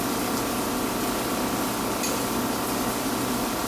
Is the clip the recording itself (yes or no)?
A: yes